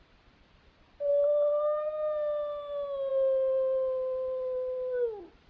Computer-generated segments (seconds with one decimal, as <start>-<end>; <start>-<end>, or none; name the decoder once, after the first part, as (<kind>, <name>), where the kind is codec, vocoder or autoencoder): none